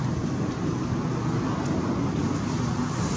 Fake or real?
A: real